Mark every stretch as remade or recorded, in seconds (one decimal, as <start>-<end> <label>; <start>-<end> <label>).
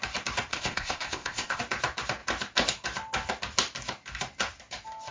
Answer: 0.0-0.5 recorded; 0.5-1.6 remade; 1.6-5.1 recorded